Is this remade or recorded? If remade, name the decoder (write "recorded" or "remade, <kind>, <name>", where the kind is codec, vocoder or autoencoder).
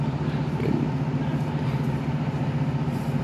recorded